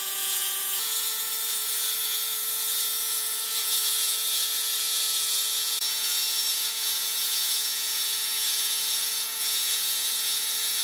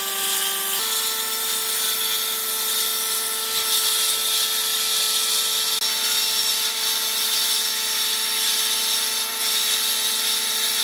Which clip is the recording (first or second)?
second